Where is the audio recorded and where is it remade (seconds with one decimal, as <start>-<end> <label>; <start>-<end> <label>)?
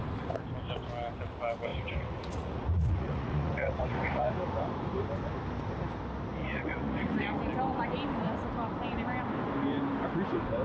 0.0-1.7 recorded; 1.7-4.3 remade; 4.3-6.4 recorded; 6.4-7.4 remade; 7.4-10.6 recorded